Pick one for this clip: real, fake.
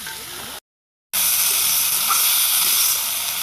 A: real